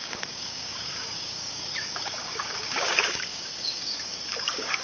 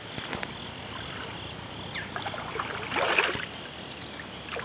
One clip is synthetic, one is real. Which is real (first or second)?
second